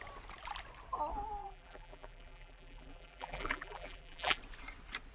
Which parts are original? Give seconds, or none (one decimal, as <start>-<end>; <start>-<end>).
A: 0.0-1.4; 4.4-5.1